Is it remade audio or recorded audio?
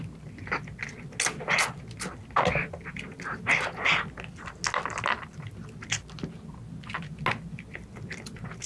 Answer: recorded